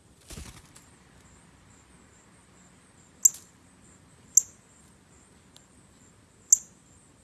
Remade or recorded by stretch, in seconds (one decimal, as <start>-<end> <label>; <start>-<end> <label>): 0.0-7.2 recorded